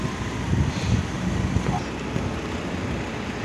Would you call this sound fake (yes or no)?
no